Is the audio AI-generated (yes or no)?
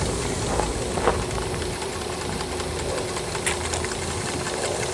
no